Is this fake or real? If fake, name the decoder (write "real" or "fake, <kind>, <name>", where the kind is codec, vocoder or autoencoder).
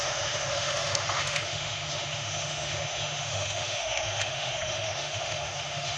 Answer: fake, autoencoder, DAC-VAE